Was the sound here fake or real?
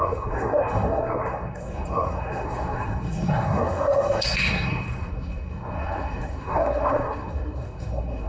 fake